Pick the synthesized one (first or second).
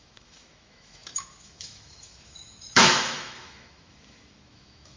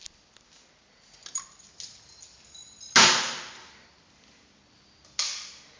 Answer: first